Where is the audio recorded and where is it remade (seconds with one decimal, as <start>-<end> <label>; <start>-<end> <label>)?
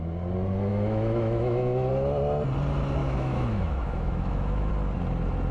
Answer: 0.0-0.7 recorded; 0.7-1.9 remade; 1.9-3.0 recorded; 3.0-4.7 remade; 4.7-5.5 recorded